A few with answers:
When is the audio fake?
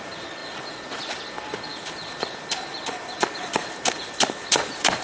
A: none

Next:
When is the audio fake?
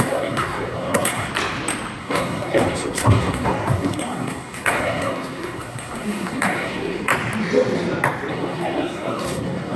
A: 0.0-1.3 (codec, SNAC); 2.0-7.1; 8.3-9.8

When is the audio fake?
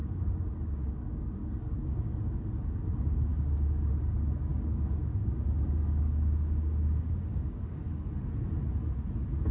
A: 0.0-2.9 (codec, DAC); 3.3-3.9; 4.5-7.8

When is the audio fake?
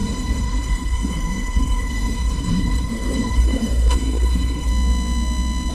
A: 0.0-4.7 (codec, SNAC)